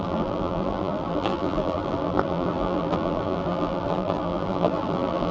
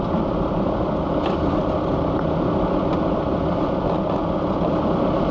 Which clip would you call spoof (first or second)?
first